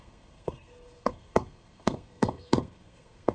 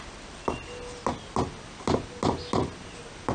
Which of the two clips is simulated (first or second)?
first